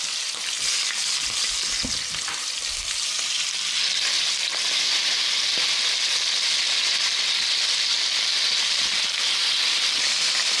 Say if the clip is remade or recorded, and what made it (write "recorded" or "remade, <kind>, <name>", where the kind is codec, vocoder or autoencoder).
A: recorded